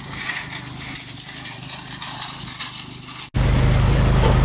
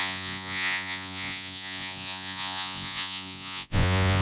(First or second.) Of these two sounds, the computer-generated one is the second